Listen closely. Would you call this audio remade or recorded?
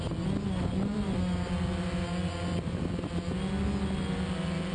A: recorded